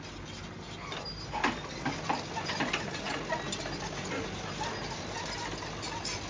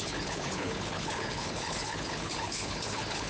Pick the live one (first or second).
first